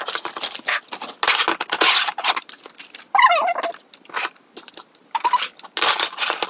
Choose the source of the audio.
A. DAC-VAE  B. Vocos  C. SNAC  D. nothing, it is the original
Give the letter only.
D